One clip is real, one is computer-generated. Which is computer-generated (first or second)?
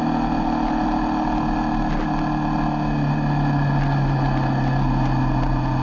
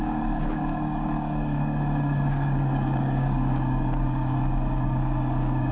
second